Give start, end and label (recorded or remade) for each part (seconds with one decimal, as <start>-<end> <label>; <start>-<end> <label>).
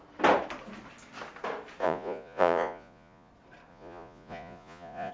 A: 0.0-1.8 recorded; 1.8-3.3 remade; 3.3-3.7 recorded; 3.7-5.1 remade